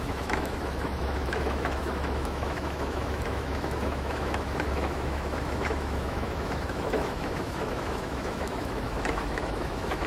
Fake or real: fake